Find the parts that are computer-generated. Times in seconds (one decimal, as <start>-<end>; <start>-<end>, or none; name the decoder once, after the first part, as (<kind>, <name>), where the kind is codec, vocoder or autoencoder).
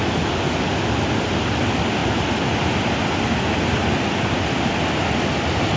none